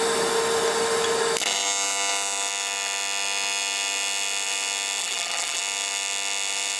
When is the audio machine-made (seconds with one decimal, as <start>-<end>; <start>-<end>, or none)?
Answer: 5.0-5.6